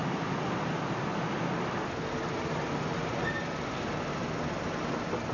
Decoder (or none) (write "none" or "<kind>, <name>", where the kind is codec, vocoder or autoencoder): none